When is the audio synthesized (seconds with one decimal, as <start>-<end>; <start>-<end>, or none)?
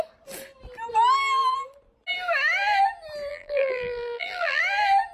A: 3.3-4.6